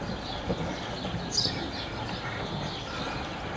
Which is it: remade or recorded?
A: recorded